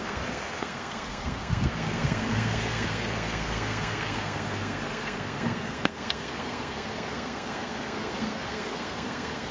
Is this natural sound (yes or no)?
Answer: no